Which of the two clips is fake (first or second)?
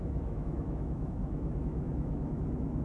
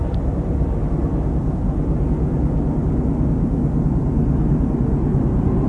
first